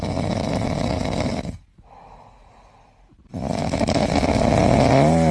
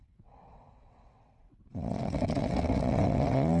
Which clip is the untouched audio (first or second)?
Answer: first